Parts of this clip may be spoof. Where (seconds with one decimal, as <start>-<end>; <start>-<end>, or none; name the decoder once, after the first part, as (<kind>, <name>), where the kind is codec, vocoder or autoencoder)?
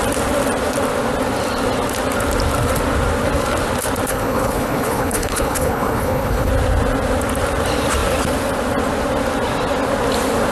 4.1-6.5 (codec, HILCodec)